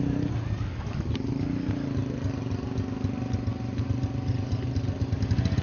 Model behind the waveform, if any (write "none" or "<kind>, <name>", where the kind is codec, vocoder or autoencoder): none